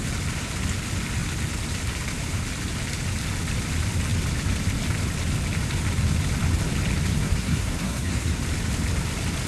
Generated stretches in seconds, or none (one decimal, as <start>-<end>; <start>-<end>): 7.1-8.4